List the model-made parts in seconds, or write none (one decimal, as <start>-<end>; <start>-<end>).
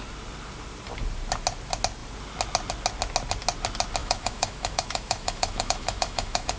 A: 4.0-6.6